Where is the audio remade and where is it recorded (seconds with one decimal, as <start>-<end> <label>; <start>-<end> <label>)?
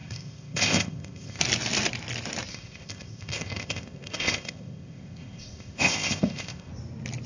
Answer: 0.0-1.4 remade; 1.4-2.5 recorded; 2.5-6.7 remade; 6.7-7.3 recorded